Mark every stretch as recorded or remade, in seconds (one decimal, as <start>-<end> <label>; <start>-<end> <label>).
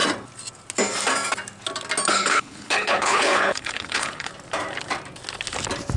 0.0-2.1 recorded; 2.1-4.3 remade; 4.3-6.0 recorded